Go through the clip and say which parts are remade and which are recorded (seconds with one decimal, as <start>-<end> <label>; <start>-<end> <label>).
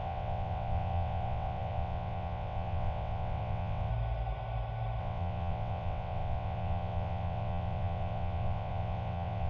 0.0-3.9 remade; 3.9-5.0 recorded; 5.0-9.5 remade